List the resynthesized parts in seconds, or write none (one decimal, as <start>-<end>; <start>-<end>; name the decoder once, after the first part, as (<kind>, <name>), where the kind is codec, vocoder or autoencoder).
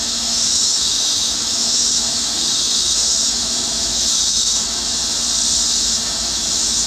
0.0-5.0 (autoencoder, DAC-VAE); 5.8-6.9